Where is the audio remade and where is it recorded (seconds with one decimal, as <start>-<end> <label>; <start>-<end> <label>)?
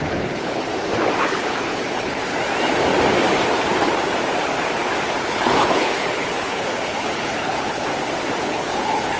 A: 0.0-0.7 remade; 0.7-1.2 recorded; 1.2-2.3 remade; 2.3-5.2 recorded; 5.2-7.9 remade; 7.9-8.4 recorded; 8.4-9.2 remade